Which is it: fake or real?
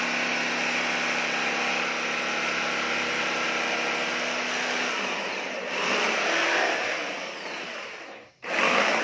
real